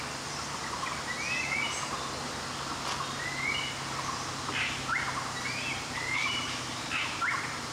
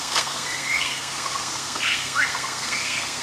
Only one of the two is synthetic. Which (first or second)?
second